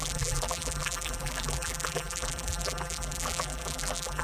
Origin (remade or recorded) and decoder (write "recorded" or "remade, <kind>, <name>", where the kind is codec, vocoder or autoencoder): remade, vocoder, BigVGAN v2